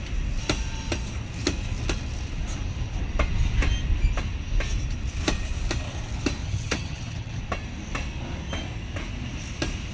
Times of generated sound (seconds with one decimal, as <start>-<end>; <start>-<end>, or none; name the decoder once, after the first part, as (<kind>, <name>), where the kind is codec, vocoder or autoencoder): 6.4-7.4 (vocoder, HiFi-GAN)